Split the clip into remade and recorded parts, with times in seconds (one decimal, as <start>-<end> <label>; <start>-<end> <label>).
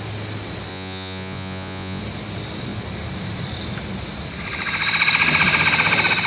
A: 0.0-0.7 recorded; 0.7-2.0 remade; 2.0-6.3 recorded